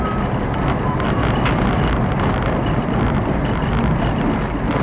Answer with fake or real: real